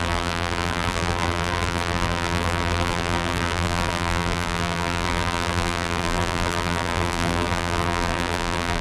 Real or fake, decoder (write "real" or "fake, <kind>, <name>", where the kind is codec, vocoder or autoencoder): fake, vocoder, BigVGAN v2